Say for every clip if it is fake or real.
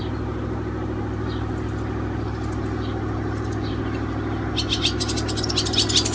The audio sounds real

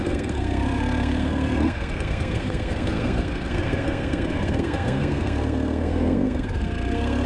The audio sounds fake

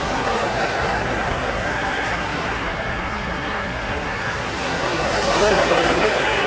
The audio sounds fake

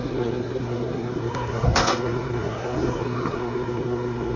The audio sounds fake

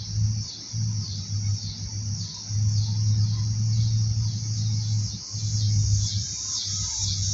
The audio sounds real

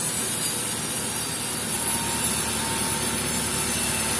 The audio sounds real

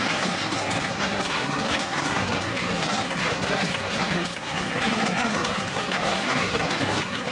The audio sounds fake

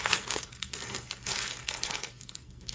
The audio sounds fake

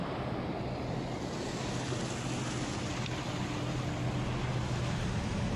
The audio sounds real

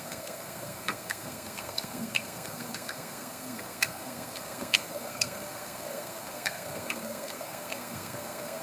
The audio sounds fake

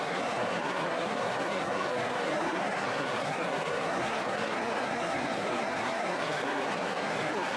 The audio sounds fake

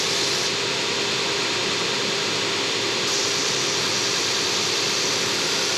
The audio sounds real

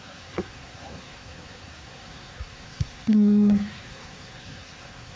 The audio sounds fake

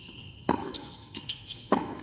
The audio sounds fake